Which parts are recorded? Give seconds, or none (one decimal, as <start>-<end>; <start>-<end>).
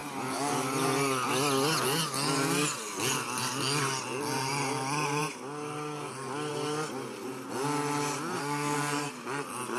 0.0-8.4; 9.1-9.8